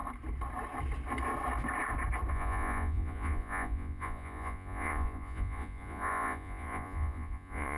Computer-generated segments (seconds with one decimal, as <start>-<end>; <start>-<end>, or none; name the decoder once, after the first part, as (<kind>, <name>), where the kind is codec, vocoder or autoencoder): 2.3-7.8 (vocoder, Vocos)